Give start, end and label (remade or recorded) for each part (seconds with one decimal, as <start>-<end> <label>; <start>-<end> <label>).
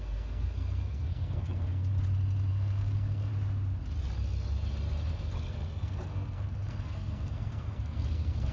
0.0-1.9 remade; 1.9-2.5 recorded; 2.5-3.3 remade; 3.3-5.1 recorded; 5.1-8.5 remade